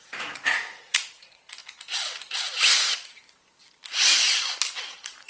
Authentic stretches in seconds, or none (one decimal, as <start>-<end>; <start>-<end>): 1.6-4.8